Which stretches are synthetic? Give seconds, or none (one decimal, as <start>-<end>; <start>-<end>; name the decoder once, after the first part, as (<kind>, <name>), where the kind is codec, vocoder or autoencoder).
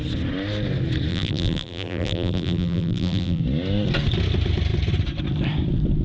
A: 1.1-3.4 (vocoder, BigVGAN v2)